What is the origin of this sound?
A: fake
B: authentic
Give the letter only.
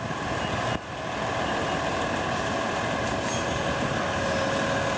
B